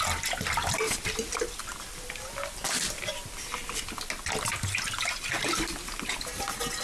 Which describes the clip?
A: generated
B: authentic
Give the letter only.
B